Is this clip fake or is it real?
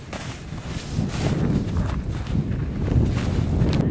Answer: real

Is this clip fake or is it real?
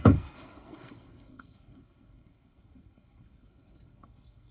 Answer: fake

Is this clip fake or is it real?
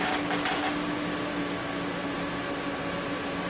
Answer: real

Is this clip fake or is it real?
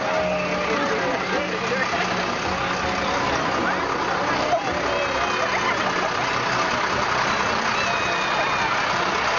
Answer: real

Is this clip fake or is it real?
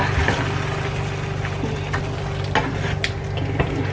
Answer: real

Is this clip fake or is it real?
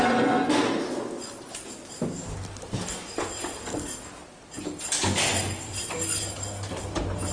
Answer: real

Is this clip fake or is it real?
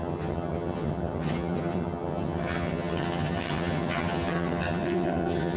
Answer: fake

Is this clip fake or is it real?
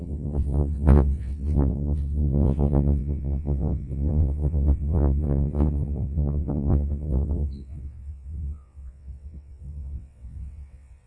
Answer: fake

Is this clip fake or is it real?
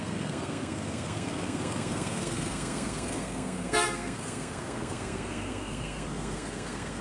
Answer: fake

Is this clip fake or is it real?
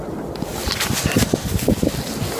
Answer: real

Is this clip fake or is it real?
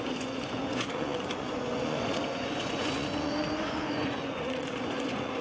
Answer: fake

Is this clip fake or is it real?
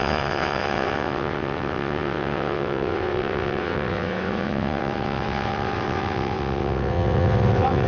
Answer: fake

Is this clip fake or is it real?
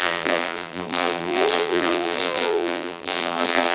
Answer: fake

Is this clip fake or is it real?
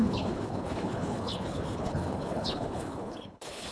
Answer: fake